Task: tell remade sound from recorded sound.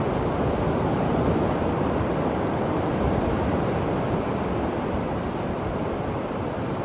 remade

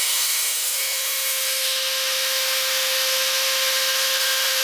remade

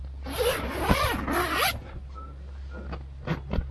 recorded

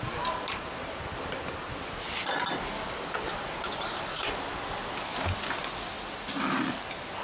recorded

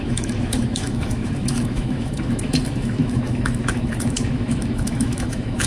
remade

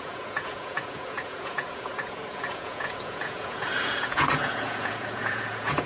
remade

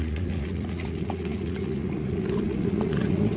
remade